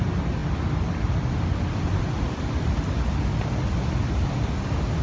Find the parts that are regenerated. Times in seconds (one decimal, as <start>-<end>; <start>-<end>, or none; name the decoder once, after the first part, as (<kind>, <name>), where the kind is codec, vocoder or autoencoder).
0.4-3.4 (vocoder, BigVGAN v2)